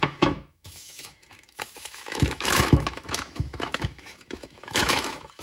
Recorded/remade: remade